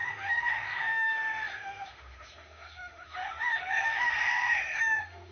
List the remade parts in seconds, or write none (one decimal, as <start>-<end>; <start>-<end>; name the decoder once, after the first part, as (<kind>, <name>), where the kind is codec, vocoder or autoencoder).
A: 0.0-5.3 (autoencoder, DAC-VAE)

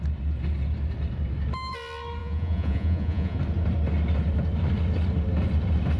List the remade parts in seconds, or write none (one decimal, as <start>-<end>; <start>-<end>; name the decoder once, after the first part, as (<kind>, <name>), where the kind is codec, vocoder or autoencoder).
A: 2.2-3.4 (vocoder, Vocos)

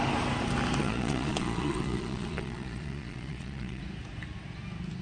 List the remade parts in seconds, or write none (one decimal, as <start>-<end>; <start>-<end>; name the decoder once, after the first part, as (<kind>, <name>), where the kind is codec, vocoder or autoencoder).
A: 0.8-3.8 (vocoder, Vocos)

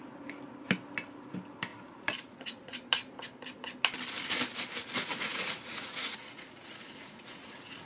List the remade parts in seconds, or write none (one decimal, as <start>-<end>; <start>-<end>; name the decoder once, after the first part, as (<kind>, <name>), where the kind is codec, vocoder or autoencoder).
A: 1.7-2.6 (vocoder, Vocos); 5.1-7.9

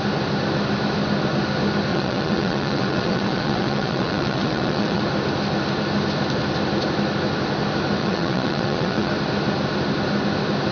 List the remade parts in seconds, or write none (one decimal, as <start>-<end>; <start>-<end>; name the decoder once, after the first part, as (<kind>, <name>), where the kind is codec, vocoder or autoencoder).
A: 1.9-5.0 (vocoder, WaveNeXt); 8.0-9.1

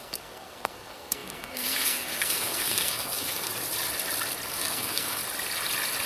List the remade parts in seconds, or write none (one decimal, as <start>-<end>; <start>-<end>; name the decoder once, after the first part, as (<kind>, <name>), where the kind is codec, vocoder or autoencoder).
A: 0.0-3.5 (codec, SNAC); 4.5-5.2

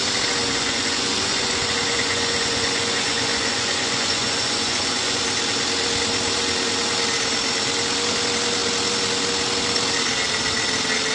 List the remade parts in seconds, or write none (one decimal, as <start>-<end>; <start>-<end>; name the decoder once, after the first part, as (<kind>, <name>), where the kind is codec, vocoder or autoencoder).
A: 0.4-5.2 (vocoder, Vocos)